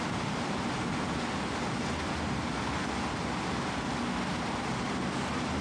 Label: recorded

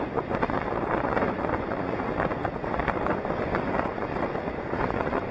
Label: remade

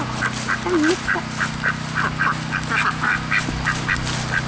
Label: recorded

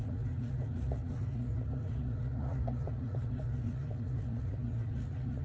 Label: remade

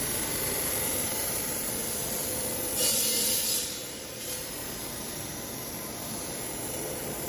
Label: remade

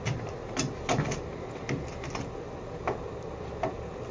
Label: recorded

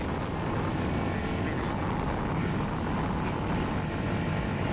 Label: recorded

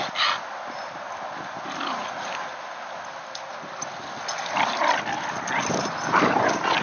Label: recorded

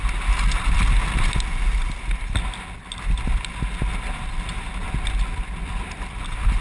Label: recorded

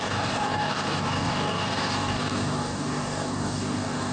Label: remade